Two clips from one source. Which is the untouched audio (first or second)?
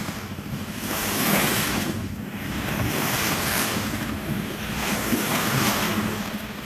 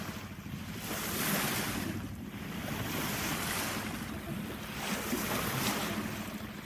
second